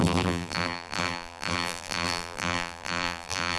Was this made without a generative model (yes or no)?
no